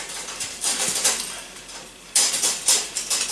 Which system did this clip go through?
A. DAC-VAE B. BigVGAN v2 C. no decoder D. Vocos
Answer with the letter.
B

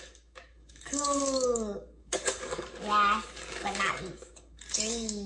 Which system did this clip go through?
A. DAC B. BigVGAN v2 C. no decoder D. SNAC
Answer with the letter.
A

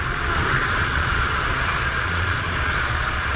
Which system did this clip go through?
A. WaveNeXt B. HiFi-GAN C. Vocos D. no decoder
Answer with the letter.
C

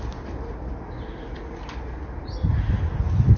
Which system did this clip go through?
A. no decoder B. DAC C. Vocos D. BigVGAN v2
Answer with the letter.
A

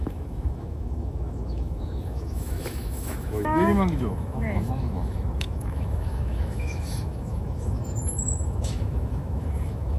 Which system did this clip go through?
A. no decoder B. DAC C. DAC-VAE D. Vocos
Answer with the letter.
C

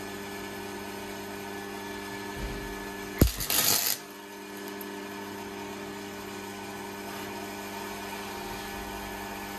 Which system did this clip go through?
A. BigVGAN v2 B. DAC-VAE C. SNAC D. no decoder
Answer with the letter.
D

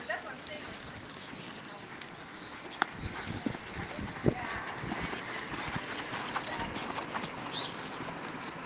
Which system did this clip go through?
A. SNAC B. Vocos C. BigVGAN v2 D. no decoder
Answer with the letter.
D